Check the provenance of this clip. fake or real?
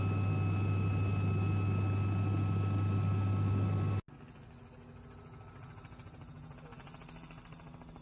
real